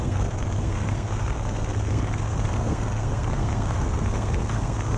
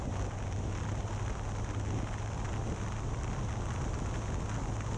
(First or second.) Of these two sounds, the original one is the second